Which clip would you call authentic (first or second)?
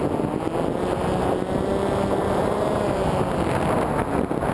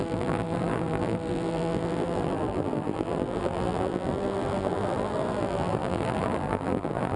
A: first